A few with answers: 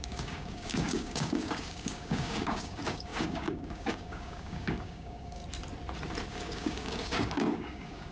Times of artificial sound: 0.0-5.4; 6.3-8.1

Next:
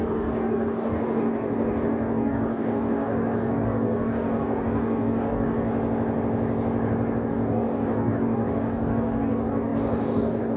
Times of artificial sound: 0.0-5.7; 7.2-10.6

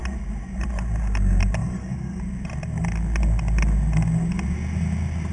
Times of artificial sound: 1.6-2.2

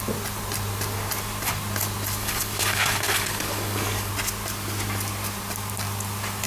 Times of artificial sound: 2.2-4.1

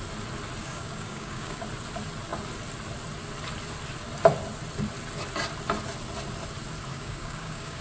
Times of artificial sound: 0.6-1.6; 6.9-7.8

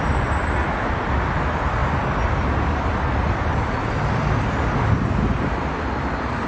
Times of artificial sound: none